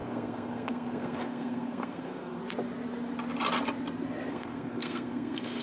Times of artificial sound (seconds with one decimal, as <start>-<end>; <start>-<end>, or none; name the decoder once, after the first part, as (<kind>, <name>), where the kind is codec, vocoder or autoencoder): 0.0-2.4 (codec, SNAC); 4.3-5.6

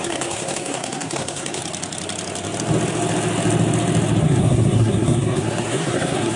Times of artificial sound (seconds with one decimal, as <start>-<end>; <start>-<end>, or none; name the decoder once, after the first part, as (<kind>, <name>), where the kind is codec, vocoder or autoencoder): 0.0-1.6 (codec, SNAC); 4.2-6.4

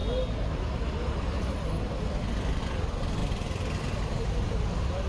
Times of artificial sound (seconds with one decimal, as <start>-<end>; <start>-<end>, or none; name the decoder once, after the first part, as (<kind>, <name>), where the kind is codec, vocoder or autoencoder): none